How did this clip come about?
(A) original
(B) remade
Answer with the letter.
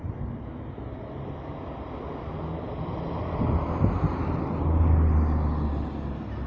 A